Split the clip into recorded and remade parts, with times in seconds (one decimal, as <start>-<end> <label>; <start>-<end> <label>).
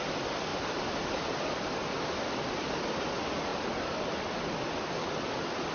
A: 0.0-5.7 recorded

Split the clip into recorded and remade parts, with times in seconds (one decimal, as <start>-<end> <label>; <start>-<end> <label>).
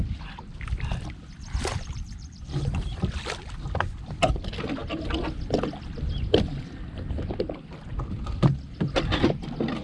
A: 0.0-9.8 recorded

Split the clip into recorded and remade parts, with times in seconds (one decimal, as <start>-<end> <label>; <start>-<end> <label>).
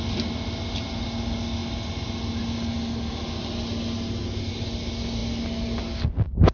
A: 0.0-6.5 recorded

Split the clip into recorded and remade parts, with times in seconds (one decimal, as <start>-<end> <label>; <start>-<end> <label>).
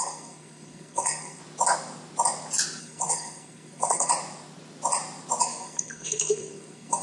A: 0.0-1.4 remade; 1.4-2.8 recorded; 2.8-4.1 remade; 4.1-5.4 recorded; 5.4-7.0 remade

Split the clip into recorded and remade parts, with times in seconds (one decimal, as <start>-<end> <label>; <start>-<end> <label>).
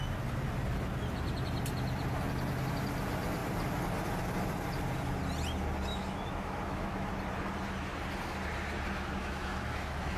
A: 0.0-5.9 recorded; 5.9-7.1 remade; 7.1-9.2 recorded; 9.2-10.2 remade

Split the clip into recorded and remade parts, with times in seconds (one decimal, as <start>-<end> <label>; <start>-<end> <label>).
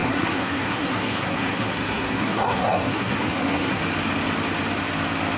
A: 0.0-3.8 remade; 3.8-5.4 recorded